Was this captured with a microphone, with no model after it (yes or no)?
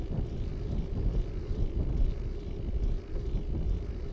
yes